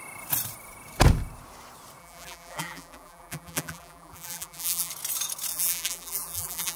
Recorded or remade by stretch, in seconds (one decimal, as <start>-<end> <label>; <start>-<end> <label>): 0.0-2.0 recorded; 2.0-4.9 remade; 4.9-5.5 recorded; 5.5-6.8 remade